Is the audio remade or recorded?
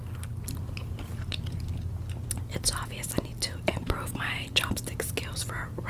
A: recorded